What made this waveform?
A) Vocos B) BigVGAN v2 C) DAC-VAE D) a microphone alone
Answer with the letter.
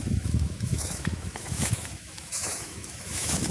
C